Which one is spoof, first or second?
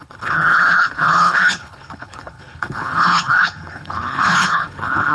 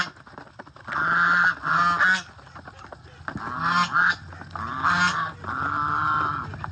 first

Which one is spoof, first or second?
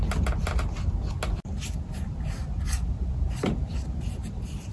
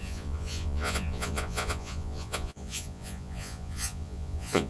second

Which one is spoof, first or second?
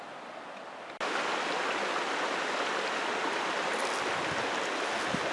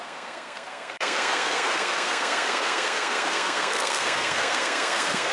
second